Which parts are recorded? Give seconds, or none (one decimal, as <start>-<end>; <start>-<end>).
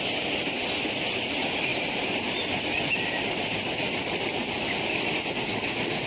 0.0-6.1